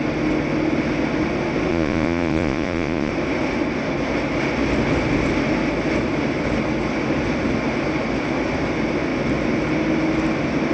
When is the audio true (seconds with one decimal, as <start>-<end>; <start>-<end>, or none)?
0.0-1.7; 3.1-10.7